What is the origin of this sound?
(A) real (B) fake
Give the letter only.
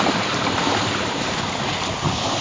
B